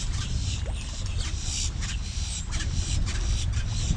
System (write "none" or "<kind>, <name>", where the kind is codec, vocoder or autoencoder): none